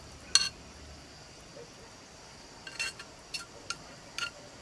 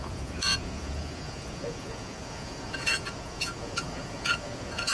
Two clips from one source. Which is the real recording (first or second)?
first